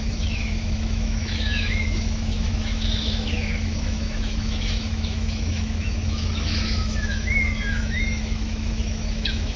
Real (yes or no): no